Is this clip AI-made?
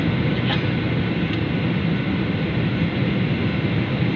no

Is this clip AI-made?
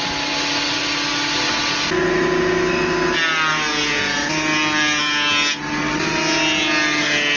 no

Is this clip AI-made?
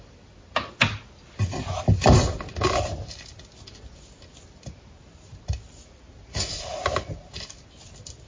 no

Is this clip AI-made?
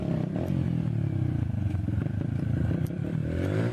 no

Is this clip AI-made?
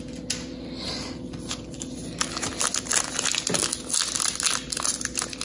no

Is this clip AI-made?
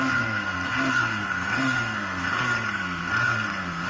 yes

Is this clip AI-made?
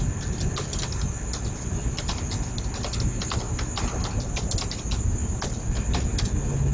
no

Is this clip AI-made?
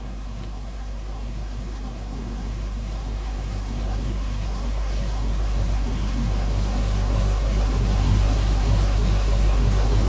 yes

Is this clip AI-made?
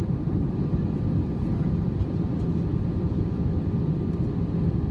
no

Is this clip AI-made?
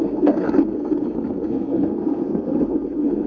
yes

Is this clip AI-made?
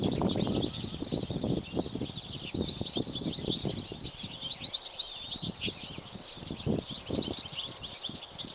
no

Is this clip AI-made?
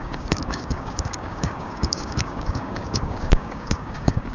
yes